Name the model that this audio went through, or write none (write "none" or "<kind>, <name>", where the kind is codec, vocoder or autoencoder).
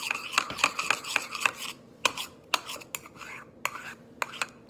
none